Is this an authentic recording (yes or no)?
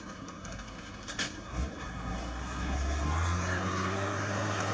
no